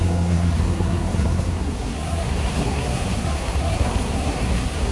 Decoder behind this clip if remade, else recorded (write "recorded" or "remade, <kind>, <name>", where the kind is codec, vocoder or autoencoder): remade, codec, SNAC